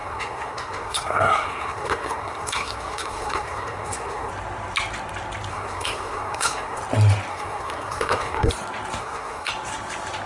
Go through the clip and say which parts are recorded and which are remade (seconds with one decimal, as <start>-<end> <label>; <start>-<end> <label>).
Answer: 0.0-4.3 remade; 4.3-5.5 recorded; 5.5-6.8 remade; 6.8-7.3 recorded; 7.3-8.5 remade; 8.5-9.0 recorded; 9.0-9.5 remade; 9.5-10.3 recorded